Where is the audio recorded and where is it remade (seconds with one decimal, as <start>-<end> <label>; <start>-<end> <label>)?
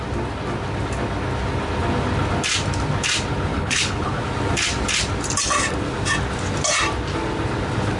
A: 0.0-3.5 recorded; 3.5-4.2 remade; 4.2-8.0 recorded